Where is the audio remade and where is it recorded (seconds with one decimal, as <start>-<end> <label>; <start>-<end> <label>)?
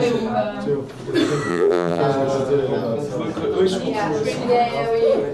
0.0-1.5 recorded; 1.5-2.0 remade; 2.0-5.3 recorded